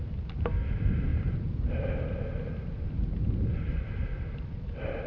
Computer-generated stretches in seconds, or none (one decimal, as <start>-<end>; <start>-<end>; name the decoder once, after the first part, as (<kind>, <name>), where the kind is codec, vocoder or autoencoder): 1.1-1.9 (vocoder, BigVGAN v2)